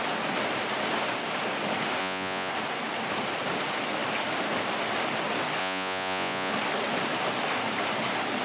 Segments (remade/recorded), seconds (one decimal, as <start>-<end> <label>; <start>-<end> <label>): 0.0-2.0 recorded; 2.0-2.5 remade; 2.5-5.6 recorded; 5.6-6.5 remade; 6.5-8.4 recorded